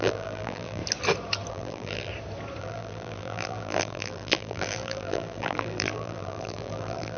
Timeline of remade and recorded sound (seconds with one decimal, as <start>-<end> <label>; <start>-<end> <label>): 0.0-0.8 remade; 0.8-1.5 recorded; 1.5-2.1 remade; 2.1-2.6 recorded; 2.6-7.2 remade